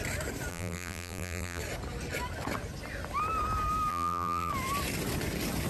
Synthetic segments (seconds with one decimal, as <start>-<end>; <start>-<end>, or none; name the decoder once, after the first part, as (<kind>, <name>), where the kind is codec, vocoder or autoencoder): 0.5-1.6 (vocoder, BigVGAN v2); 3.9-4.5